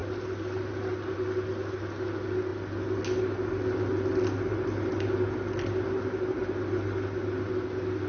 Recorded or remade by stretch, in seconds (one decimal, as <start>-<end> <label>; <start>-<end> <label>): 0.0-8.1 recorded